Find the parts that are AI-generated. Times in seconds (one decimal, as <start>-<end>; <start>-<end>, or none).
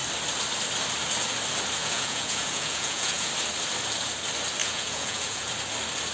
1.8-3.3; 4.6-5.5